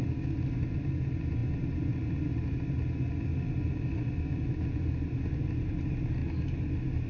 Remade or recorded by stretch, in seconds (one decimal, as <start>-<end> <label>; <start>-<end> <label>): 0.0-7.1 recorded